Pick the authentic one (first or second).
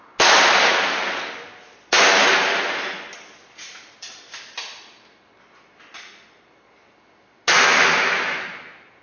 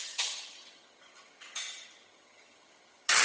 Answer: first